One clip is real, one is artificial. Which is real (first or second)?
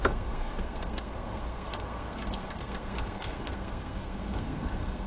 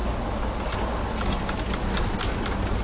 second